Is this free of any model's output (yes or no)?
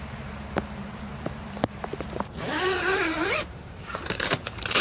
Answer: no